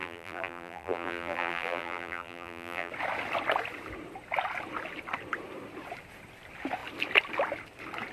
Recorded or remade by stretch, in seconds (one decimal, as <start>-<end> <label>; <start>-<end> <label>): 0.0-2.9 remade; 2.9-8.1 recorded